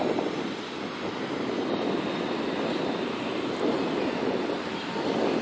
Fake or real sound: real